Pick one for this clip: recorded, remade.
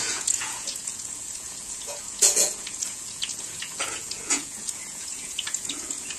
remade